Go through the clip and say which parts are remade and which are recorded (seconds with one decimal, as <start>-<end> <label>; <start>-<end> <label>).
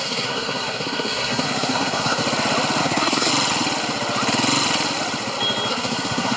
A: 0.0-2.2 remade; 2.2-2.8 recorded; 2.8-3.3 remade; 3.3-5.7 recorded; 5.7-6.4 remade